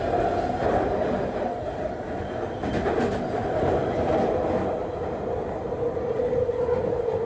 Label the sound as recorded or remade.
recorded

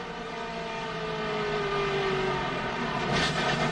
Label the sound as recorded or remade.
recorded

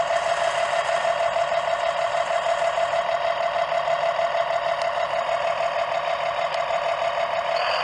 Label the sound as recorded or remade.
recorded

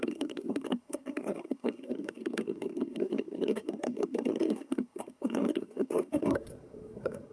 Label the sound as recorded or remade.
remade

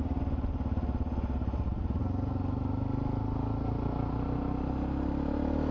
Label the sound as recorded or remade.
recorded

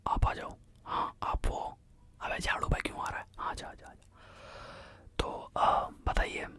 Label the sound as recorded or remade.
recorded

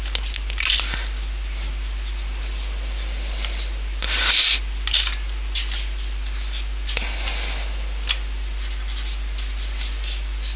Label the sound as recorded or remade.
recorded